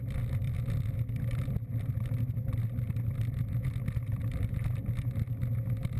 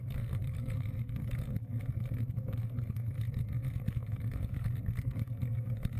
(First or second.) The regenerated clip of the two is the second